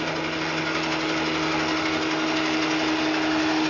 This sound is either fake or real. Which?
real